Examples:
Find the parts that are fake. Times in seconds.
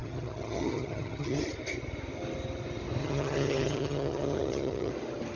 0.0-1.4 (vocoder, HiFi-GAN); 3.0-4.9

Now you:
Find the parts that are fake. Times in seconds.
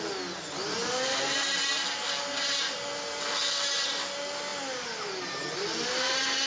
none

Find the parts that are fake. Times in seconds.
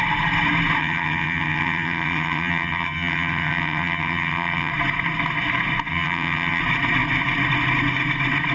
0.8-4.7 (vocoder, HiFi-GAN); 5.9-6.6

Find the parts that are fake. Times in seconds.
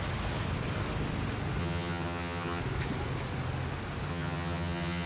1.6-2.6 (vocoder, HiFi-GAN); 4.1-5.1